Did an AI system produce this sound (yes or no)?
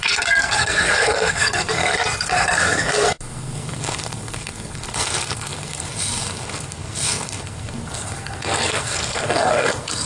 yes